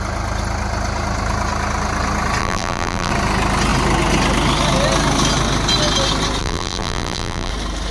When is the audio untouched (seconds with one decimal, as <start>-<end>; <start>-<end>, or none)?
0.0-2.4; 3.1-6.4; 7.5-7.9